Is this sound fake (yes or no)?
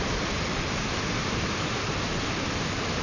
yes